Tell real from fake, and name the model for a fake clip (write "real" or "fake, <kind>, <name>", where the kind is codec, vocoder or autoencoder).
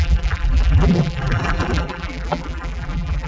fake, vocoder, BigVGAN v2